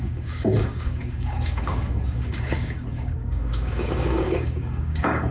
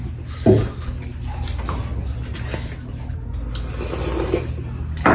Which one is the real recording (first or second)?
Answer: second